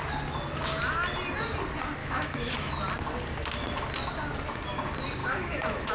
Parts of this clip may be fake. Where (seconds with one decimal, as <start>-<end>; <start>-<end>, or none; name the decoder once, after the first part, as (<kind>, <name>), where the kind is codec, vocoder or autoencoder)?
2.0-2.7 (autoencoder, DAC-VAE); 5.2-5.9